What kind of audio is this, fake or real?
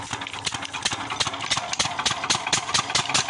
real